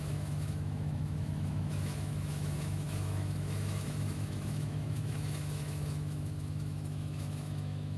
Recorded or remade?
remade